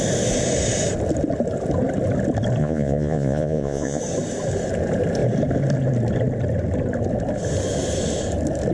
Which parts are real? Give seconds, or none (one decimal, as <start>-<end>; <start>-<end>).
0.0-2.6; 4.0-8.7